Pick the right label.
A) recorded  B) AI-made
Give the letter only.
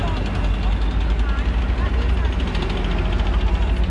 A